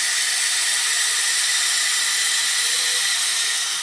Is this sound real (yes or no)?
yes